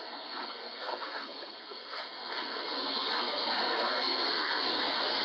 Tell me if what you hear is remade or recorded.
remade